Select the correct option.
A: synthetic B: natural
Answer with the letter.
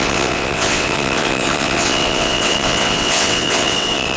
A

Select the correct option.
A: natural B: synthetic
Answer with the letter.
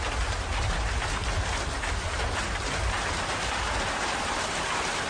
A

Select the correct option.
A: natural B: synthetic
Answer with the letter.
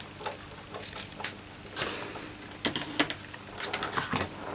A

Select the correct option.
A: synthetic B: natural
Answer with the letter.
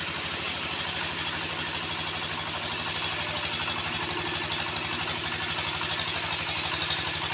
B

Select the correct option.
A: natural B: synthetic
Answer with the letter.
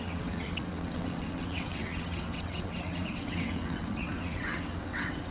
B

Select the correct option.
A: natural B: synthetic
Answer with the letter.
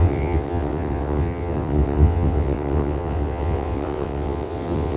B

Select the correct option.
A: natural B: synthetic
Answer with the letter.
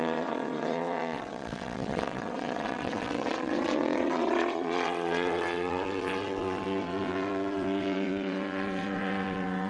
B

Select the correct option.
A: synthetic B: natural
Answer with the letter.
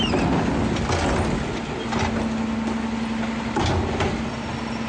B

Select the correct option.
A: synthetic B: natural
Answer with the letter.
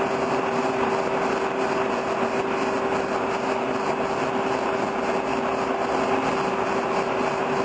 B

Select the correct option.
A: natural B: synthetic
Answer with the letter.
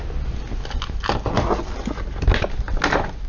A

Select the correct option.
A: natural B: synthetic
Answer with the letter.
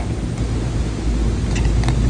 A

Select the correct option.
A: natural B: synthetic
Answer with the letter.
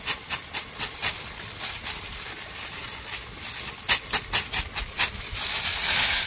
A